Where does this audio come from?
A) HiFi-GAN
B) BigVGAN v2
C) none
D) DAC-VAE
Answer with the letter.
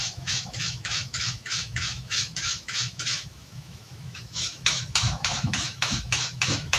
D